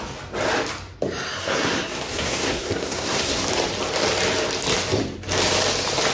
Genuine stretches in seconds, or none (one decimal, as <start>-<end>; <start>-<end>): 0.0-1.4; 3.4-6.1